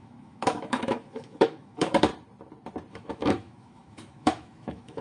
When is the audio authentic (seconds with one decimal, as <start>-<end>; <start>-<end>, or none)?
2.1-2.9